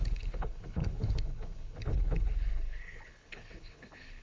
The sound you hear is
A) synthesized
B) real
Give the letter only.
A